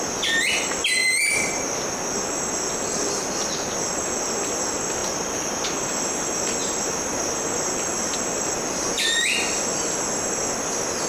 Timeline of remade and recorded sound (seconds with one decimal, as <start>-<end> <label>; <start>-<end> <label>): 0.0-1.0 recorded; 1.0-1.5 remade; 1.5-5.0 recorded; 5.0-8.6 remade; 8.6-11.1 recorded